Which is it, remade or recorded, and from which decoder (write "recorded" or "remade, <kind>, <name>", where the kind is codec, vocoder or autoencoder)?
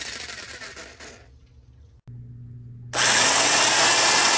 recorded